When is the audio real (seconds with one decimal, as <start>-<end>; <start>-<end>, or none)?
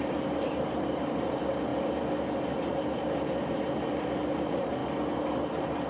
1.7-2.7; 4.8-5.4